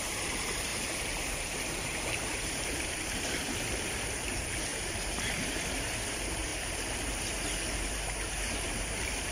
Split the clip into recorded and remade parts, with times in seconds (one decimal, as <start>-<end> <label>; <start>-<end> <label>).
0.0-6.5 remade; 6.5-7.9 recorded; 7.9-9.3 remade